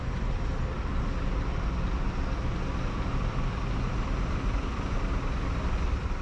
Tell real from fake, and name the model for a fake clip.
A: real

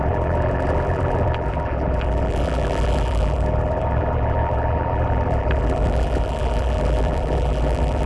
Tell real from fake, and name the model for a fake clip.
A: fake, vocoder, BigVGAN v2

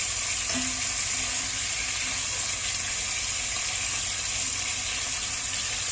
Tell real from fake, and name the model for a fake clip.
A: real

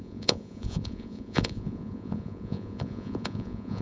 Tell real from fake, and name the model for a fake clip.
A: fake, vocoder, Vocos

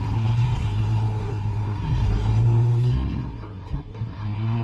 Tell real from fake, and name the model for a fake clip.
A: fake, codec, SNAC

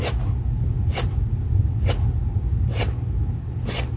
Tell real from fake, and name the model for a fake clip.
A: real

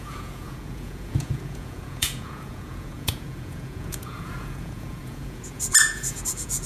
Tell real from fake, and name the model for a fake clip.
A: fake, vocoder, Vocos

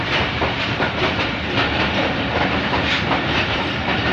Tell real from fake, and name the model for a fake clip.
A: fake, vocoder, BigVGAN v2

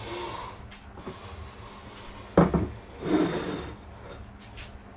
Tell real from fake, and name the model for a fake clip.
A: real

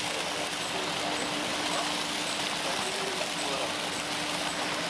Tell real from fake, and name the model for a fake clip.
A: real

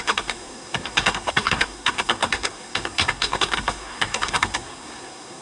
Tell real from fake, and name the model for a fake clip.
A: fake, codec, SNAC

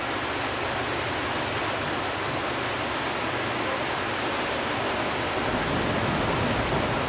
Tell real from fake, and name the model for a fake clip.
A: real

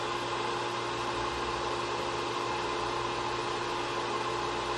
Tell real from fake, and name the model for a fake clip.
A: real